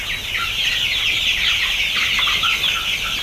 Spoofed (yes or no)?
no